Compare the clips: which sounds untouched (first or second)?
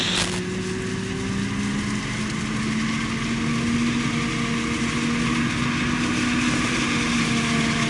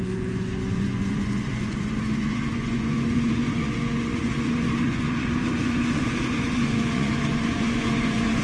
first